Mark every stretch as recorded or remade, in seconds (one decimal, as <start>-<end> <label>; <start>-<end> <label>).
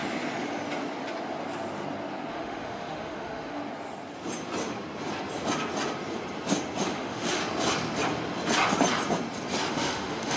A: 0.0-2.3 recorded; 2.3-3.6 remade; 3.6-6.9 recorded; 6.9-7.4 remade; 7.4-9.7 recorded; 9.7-10.4 remade